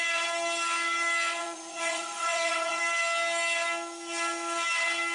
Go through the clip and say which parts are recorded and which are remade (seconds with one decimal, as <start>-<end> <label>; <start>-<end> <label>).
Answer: 0.0-1.4 recorded; 1.4-2.8 remade; 2.8-5.1 recorded